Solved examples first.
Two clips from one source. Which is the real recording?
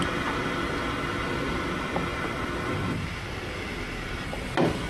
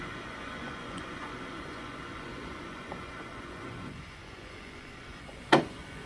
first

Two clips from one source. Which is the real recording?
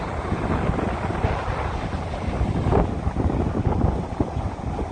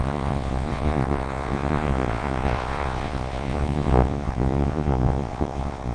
first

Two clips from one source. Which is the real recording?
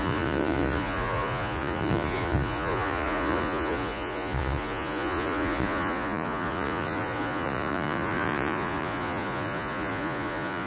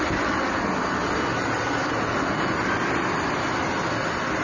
second